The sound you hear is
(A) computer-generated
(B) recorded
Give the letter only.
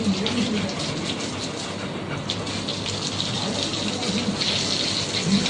B